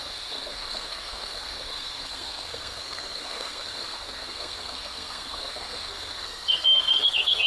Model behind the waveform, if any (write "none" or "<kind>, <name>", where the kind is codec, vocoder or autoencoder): codec, SNAC